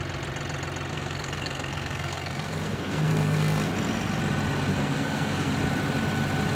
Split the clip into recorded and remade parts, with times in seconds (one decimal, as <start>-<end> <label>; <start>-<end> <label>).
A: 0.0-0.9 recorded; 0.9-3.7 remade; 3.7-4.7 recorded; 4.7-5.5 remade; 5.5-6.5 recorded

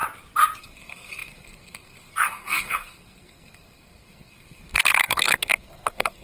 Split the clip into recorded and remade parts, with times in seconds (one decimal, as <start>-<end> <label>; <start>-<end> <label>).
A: 0.0-0.6 recorded; 0.6-6.2 remade

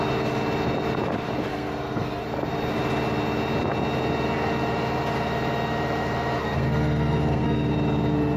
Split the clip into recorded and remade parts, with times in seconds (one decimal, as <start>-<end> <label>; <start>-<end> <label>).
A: 0.0-1.5 recorded; 1.5-2.2 remade; 2.2-6.4 recorded; 6.4-7.7 remade; 7.7-8.4 recorded

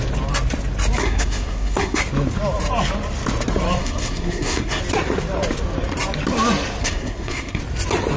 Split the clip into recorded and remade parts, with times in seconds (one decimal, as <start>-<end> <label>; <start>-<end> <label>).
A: 0.0-1.0 recorded; 1.0-2.0 remade; 2.0-3.8 recorded; 3.8-4.8 remade; 4.8-6.8 recorded; 6.8-7.6 remade; 7.6-8.2 recorded

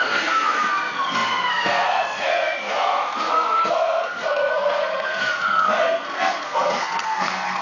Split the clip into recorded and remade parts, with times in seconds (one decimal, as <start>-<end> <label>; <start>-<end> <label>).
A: 0.0-7.6 remade